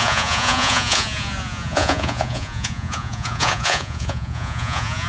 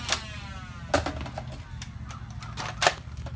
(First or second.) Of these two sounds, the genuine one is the second